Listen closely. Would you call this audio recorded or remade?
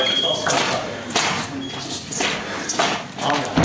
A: recorded